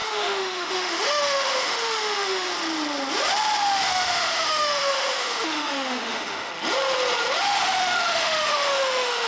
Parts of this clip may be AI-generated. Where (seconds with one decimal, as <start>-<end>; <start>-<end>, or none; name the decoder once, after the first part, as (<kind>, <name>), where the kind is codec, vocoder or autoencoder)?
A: 0.0-2.5 (autoencoder, DAC-VAE); 3.6-6.5; 7.4-9.3